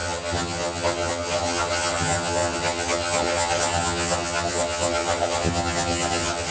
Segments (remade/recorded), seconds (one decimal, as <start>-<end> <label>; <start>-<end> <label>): 0.0-6.5 remade